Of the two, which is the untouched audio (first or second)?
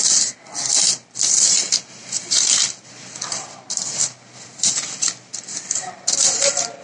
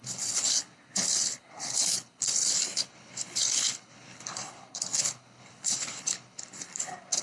first